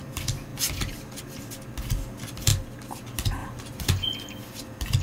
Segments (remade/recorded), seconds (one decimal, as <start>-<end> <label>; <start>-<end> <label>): 0.0-2.5 recorded; 2.5-3.0 remade; 3.0-3.4 recorded; 3.4-4.1 remade; 4.1-5.0 recorded